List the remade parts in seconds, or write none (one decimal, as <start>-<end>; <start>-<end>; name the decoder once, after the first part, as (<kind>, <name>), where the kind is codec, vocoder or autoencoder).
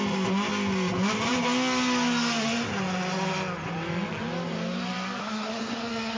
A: 5.2-6.2 (codec, SNAC)